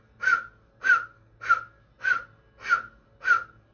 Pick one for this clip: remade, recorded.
recorded